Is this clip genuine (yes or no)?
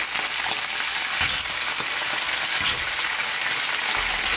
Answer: yes